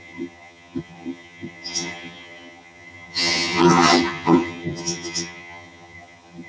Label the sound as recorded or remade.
remade